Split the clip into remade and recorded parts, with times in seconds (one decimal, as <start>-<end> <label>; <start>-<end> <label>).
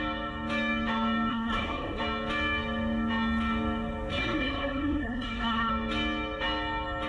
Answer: 0.0-1.3 recorded; 1.3-2.0 remade; 2.0-4.1 recorded; 4.1-5.7 remade; 5.7-7.1 recorded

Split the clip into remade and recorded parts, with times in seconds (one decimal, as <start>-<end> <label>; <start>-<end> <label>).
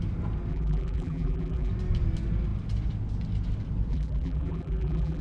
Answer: 0.0-0.5 recorded; 0.5-1.7 remade; 1.7-3.9 recorded; 3.9-5.2 remade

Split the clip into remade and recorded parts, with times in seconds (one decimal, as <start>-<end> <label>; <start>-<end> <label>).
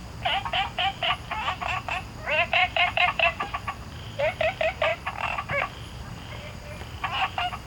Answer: 0.0-2.6 recorded; 2.6-4.2 remade; 4.2-4.9 recorded; 4.9-5.5 remade; 5.5-7.7 recorded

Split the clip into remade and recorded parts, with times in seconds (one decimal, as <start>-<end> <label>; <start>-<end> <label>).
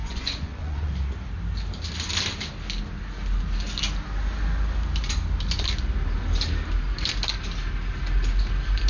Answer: 0.0-0.9 remade; 0.9-8.9 recorded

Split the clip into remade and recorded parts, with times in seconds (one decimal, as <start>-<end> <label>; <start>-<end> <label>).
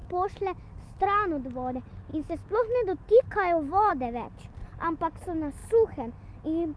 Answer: 0.0-1.0 remade; 1.0-2.1 recorded; 2.1-3.9 remade; 3.9-6.8 recorded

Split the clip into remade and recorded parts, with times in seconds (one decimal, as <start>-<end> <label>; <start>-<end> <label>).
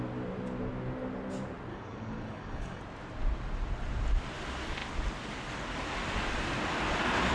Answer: 0.0-1.7 recorded; 1.7-2.8 remade; 2.8-7.3 recorded